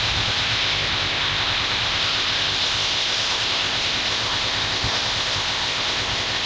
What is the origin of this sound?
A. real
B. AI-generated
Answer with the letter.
B